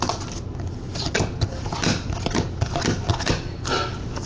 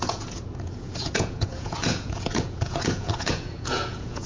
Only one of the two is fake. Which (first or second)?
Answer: second